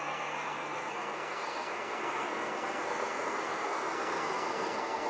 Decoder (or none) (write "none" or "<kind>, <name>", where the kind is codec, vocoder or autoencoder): codec, SNAC